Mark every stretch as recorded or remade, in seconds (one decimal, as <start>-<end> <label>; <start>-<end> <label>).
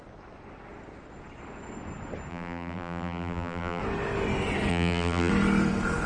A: 0.0-2.3 recorded; 2.3-3.8 remade; 3.8-4.7 recorded; 4.7-5.3 remade; 5.3-6.1 recorded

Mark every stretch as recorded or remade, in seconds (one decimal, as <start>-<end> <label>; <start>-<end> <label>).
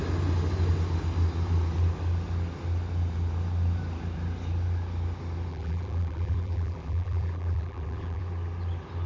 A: 0.0-5.5 recorded; 5.5-8.2 remade; 8.2-9.1 recorded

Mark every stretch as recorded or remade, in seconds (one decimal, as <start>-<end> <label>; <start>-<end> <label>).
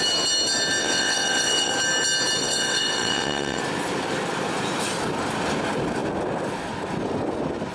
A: 0.0-0.8 recorded; 0.8-1.7 remade; 1.7-2.4 recorded; 2.4-3.6 remade; 3.6-7.7 recorded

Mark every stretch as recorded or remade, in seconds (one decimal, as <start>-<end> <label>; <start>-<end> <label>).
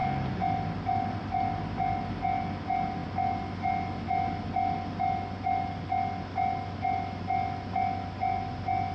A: 0.0-8.9 recorded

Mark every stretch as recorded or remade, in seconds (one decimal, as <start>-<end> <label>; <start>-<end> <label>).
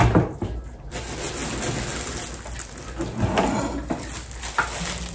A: 0.0-5.1 recorded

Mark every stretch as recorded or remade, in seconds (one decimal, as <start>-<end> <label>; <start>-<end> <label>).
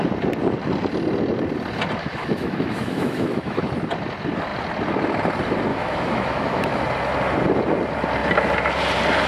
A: 0.0-2.0 recorded; 2.0-3.7 remade; 3.7-5.7 recorded; 5.7-6.8 remade; 6.8-9.3 recorded